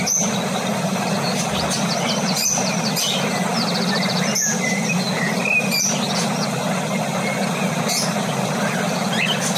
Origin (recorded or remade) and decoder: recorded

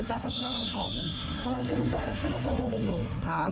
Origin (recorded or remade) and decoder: remade, codec, SNAC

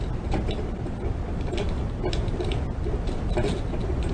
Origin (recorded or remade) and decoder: recorded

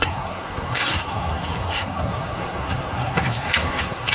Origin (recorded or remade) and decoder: remade, codec, SNAC